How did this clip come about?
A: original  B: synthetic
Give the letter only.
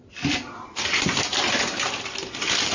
B